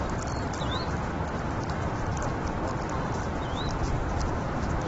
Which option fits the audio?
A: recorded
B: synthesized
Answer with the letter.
A